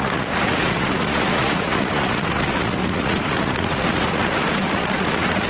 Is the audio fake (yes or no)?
yes